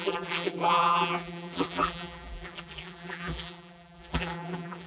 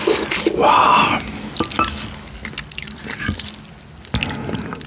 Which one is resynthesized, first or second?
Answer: first